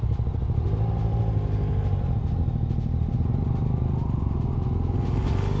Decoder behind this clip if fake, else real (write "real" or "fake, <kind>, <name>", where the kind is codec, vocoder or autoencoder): real